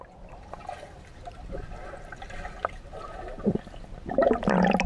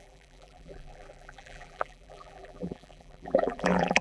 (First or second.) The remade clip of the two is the second